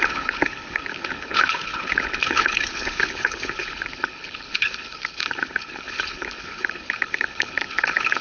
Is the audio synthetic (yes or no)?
yes